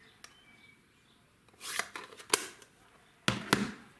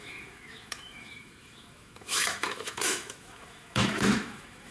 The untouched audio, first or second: first